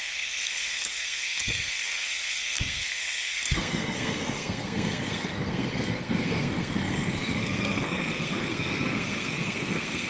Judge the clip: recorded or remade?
remade